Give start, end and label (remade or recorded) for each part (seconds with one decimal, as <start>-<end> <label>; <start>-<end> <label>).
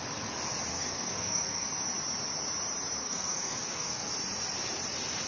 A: 0.0-0.7 recorded; 0.7-1.7 remade; 1.7-3.0 recorded; 3.0-4.1 remade; 4.1-5.3 recorded